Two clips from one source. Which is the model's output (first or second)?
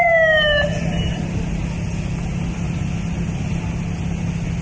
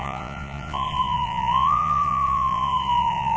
second